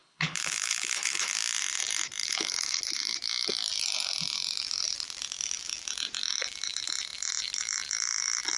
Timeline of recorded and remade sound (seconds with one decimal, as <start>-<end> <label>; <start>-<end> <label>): 0.0-1.3 remade; 1.3-2.2 recorded; 2.2-2.8 remade; 2.8-8.6 recorded